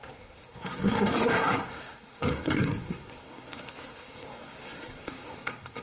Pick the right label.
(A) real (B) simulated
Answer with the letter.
B